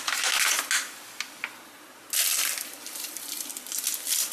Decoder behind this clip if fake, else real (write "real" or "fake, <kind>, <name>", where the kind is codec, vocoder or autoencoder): real